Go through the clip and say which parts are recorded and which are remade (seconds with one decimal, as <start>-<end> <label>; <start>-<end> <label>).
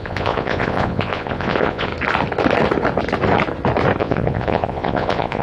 0.0-1.9 remade; 1.9-4.0 recorded; 4.0-5.4 remade